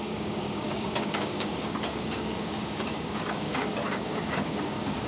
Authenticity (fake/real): fake